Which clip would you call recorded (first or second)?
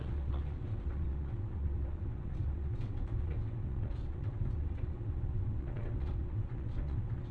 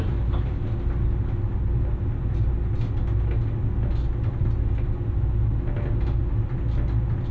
second